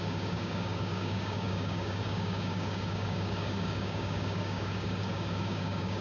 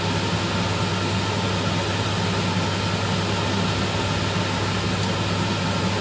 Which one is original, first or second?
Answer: second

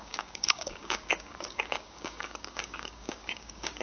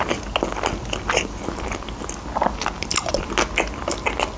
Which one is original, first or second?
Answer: second